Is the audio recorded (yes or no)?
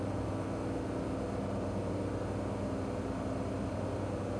yes